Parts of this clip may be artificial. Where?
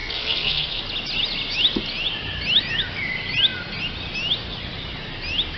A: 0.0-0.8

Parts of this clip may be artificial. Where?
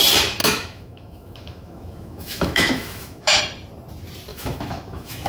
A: 0.4-3.4; 4.3-5.3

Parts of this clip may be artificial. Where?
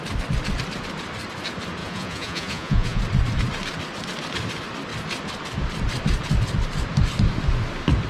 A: 1.8-3.0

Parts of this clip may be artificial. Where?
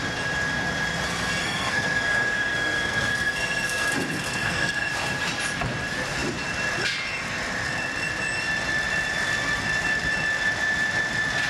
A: 1.4-4.9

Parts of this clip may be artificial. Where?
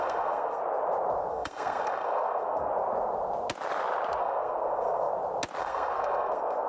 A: 0.0-0.6; 1.3-2.7; 4.2-5.1; 5.6-6.7